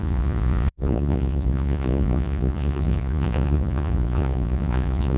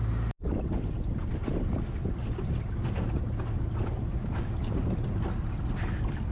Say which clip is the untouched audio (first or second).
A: second